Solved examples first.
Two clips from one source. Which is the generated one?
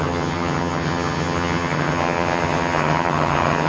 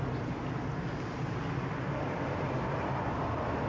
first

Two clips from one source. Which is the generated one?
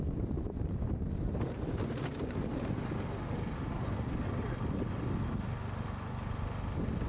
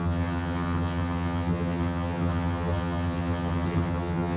second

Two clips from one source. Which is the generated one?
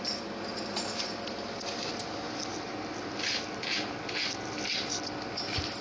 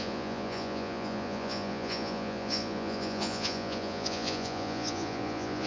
second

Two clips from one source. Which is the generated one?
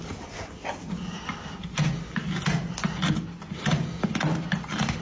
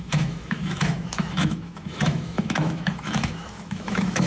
second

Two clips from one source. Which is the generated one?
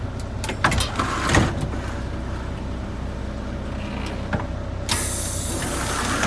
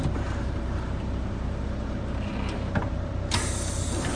second